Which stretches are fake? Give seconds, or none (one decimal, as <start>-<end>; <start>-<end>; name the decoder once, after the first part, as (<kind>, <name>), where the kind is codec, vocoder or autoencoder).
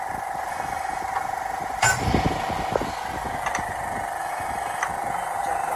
0.5-1.0 (autoencoder, DAC-VAE); 4.2-4.8